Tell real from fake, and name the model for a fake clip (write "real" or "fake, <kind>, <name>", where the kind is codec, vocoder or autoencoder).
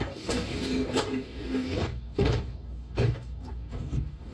fake, codec, DAC